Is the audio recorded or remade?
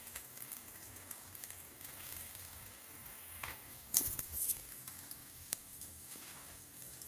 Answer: remade